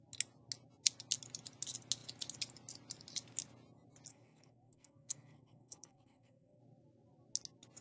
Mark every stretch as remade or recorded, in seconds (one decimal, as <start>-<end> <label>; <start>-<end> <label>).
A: 0.0-4.1 recorded; 4.1-6.6 remade; 6.6-7.8 recorded

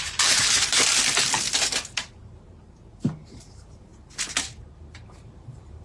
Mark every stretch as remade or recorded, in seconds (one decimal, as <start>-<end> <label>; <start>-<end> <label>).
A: 0.0-0.9 remade; 0.9-1.4 recorded; 1.4-3.9 remade; 3.9-4.7 recorded; 4.7-5.8 remade

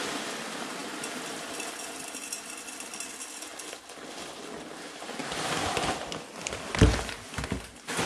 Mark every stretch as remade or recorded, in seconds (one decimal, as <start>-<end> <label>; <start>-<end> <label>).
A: 0.0-0.8 recorded; 0.8-1.7 remade; 1.7-5.2 recorded; 5.2-6.2 remade; 6.2-8.1 recorded

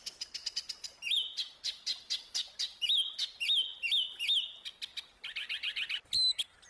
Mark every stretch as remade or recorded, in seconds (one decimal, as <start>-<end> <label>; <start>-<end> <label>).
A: 0.0-6.7 recorded

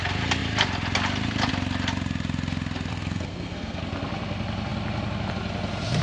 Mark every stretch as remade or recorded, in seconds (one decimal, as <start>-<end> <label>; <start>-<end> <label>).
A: 0.0-2.9 recorded; 2.9-3.8 remade; 3.8-6.0 recorded

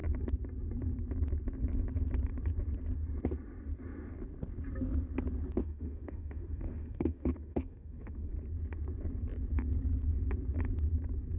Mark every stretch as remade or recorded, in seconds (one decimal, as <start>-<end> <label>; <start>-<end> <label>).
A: 0.0-5.6 recorded; 5.6-8.3 remade; 8.3-11.4 recorded

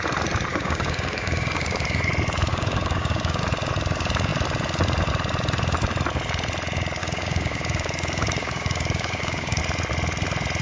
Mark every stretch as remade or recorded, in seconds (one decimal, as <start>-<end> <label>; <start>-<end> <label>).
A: 0.0-0.5 recorded; 0.5-2.1 remade; 2.1-2.5 recorded; 2.5-3.4 remade; 3.4-7.0 recorded; 7.0-9.6 remade; 9.6-10.6 recorded

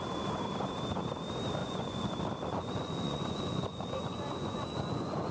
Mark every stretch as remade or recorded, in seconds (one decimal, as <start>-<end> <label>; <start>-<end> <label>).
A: 0.0-1.6 recorded; 1.6-2.1 remade; 2.1-2.5 recorded; 2.5-5.3 remade